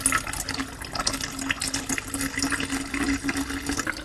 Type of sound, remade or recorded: recorded